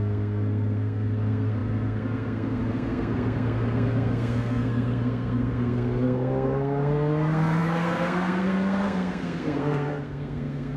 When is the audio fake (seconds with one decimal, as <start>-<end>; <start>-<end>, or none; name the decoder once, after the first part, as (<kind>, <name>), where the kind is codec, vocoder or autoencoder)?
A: 0.0-10.8 (codec, SNAC)